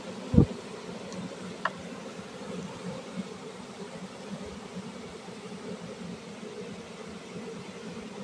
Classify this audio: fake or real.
real